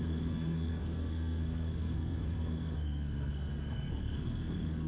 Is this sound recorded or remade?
remade